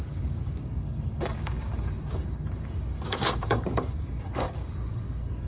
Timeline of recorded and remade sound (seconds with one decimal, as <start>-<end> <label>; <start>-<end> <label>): 0.0-5.5 remade